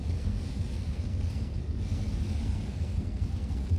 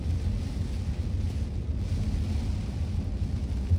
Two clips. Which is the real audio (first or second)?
second